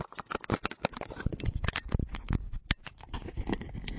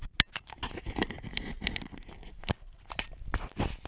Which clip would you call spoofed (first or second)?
first